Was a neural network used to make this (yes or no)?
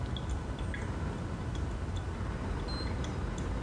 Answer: no